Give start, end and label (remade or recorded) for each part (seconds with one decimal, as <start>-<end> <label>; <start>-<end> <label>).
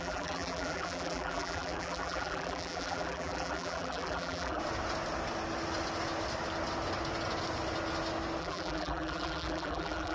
0.0-4.6 remade; 4.6-8.4 recorded; 8.4-10.1 remade